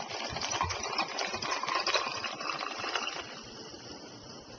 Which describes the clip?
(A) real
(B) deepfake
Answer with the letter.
B